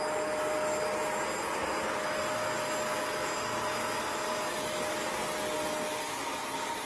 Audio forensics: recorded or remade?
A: recorded